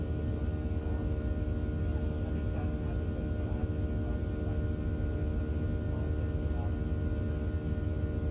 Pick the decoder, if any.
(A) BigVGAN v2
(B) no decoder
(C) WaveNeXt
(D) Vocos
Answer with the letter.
B